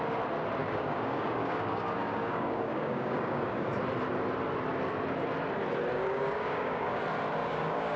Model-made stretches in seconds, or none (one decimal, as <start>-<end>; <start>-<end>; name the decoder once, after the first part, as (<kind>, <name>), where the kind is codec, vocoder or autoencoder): 0.6-3.7 (codec, DAC); 5.9-7.0; 7.4-8.0